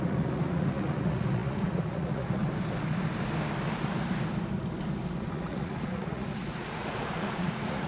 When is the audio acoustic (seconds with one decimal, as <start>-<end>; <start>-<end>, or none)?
2.4-5.3

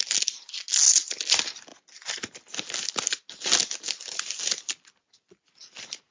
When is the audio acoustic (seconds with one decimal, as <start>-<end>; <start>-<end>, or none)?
0.0-6.1